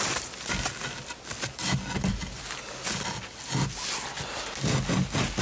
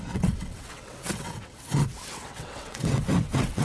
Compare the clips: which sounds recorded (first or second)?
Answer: first